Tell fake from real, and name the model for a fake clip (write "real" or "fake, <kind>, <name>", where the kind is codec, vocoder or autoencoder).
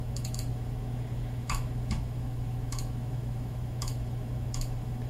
fake, autoencoder, DAC-VAE